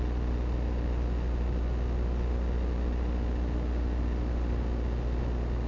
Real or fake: real